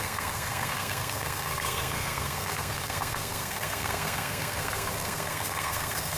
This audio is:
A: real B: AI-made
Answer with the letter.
B